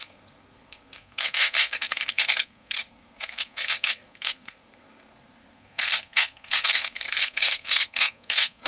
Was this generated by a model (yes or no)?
yes